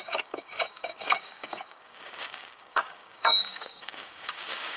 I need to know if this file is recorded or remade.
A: remade